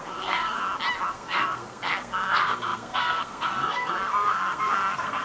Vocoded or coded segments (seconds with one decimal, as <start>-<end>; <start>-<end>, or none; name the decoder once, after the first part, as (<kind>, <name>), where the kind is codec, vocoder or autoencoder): 0.0-0.6 (codec, SNAC); 1.1-5.2